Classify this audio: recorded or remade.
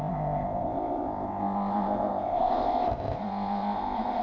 remade